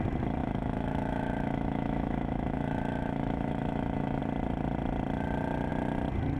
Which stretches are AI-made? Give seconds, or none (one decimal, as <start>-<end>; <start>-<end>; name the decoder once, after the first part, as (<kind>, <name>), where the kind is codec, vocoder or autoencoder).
0.4-4.2 (autoencoder, DAC-VAE)